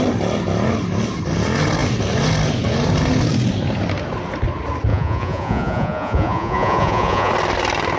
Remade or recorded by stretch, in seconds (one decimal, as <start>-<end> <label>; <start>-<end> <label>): 0.0-4.9 recorded; 4.9-7.3 remade; 7.3-8.0 recorded